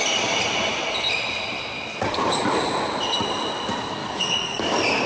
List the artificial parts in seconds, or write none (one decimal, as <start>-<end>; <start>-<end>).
4.0-4.6